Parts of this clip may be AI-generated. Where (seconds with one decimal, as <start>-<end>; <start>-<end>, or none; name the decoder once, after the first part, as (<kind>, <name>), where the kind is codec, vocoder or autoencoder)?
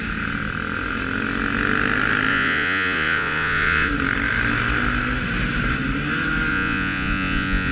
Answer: 2.3-3.9 (vocoder, Vocos); 6.5-7.7